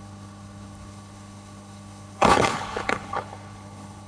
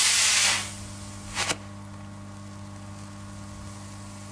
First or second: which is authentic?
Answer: second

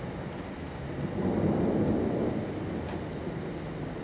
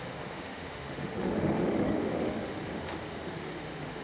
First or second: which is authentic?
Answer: first